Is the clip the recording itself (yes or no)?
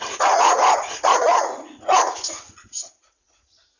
no